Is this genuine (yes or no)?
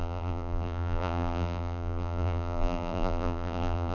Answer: no